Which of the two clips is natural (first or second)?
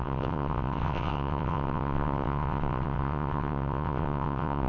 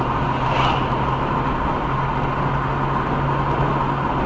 second